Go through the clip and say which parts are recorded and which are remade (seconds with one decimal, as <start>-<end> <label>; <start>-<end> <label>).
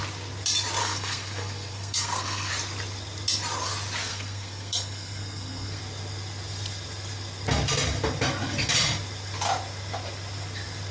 0.0-0.8 recorded; 0.8-2.5 remade; 2.5-4.1 recorded; 4.1-5.8 remade; 5.8-10.9 recorded